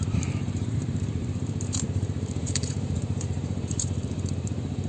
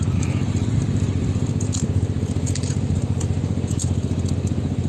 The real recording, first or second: second